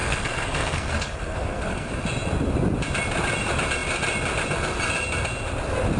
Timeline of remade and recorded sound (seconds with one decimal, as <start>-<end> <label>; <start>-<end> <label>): 0.0-1.9 remade; 1.9-6.0 recorded